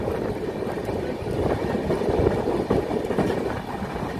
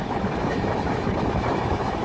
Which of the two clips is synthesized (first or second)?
second